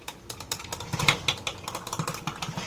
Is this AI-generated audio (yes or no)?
no